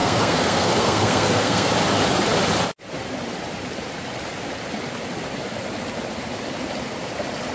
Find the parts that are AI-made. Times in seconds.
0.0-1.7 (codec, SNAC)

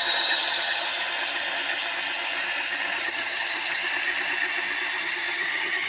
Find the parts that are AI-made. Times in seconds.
0.0-0.9 (vocoder, HiFi-GAN); 3.0-3.8; 5.0-5.9